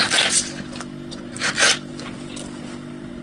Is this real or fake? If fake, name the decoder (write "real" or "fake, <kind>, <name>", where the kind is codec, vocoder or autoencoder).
real